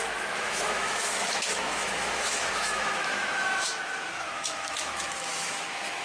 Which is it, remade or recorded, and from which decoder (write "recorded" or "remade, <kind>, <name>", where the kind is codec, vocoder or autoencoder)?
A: remade, autoencoder, DAC-VAE